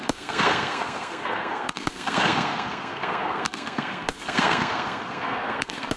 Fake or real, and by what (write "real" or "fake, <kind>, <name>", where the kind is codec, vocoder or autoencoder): fake, codec, SNAC